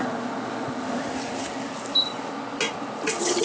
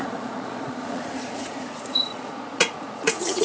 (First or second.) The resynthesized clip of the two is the second